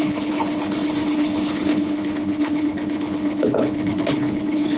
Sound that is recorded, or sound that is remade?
remade